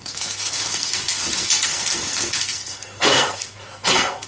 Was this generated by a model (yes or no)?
yes